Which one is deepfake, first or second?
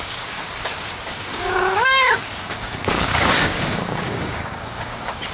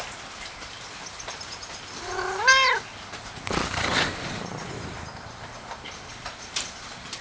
first